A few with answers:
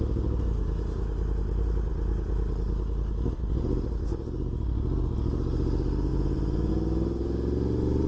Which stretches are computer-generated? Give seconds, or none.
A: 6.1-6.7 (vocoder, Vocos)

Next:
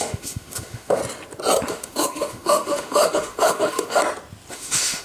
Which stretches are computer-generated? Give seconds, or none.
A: 0.0-1.0 (autoencoder, DAC-VAE); 1.7-4.0; 4.5-5.0